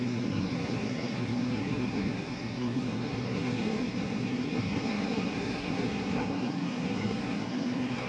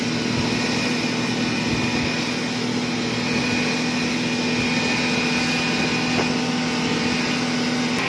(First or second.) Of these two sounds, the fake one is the first